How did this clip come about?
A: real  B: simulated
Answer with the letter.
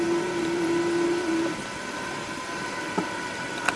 B